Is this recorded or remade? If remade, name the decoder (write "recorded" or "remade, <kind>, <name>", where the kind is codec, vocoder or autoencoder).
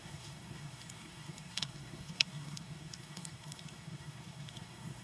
remade, codec, SNAC